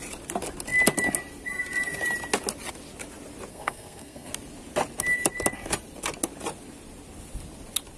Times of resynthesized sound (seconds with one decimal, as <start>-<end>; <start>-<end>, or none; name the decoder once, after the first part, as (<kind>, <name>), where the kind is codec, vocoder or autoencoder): 3.5-4.3 (codec, SNAC)